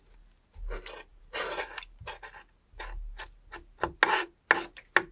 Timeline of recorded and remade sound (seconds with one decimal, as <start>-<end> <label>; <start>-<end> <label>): 0.0-1.1 recorded; 1.1-2.0 remade; 2.0-5.1 recorded